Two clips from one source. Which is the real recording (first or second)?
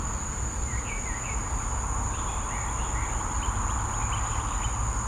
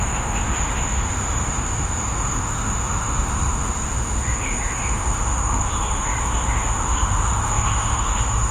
first